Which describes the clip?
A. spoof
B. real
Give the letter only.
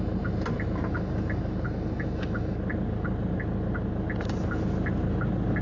B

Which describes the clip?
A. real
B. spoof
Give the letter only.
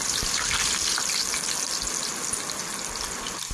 A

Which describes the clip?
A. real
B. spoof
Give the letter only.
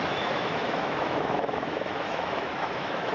B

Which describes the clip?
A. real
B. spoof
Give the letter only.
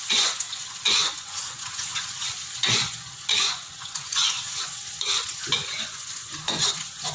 B